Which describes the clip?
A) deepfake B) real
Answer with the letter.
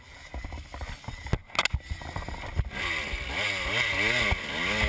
B